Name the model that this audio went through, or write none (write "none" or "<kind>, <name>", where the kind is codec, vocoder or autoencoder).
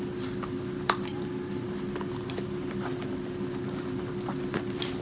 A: none